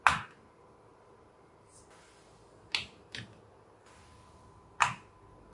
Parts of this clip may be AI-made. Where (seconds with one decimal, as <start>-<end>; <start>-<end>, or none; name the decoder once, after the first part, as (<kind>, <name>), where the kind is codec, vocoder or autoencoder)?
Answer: none